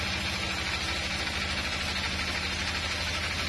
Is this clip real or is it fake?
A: real